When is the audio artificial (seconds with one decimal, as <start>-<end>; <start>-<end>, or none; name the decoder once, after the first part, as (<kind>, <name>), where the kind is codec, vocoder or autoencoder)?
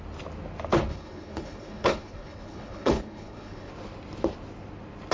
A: 0.9-3.7 (codec, HILCodec)